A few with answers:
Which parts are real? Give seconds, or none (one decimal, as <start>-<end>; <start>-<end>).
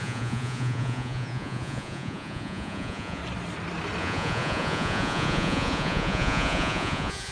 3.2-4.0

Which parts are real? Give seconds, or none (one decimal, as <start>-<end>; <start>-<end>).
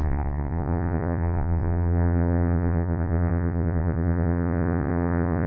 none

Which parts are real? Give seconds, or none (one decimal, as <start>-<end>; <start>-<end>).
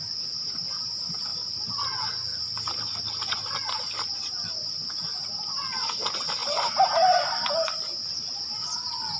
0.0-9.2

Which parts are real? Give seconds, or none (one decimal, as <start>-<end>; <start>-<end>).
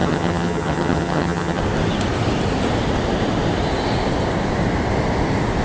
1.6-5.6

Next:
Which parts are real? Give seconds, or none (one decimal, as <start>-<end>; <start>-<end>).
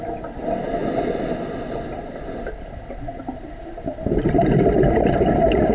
0.0-5.7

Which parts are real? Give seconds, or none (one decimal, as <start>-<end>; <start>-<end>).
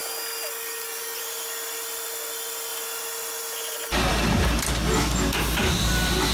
0.0-6.3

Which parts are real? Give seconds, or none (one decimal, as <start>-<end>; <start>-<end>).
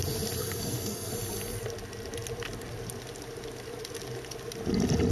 0.0-0.4; 1.1-5.1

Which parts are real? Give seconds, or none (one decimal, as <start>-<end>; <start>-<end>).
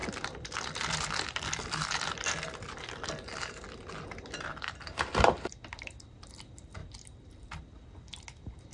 0.0-4.5; 5.5-8.7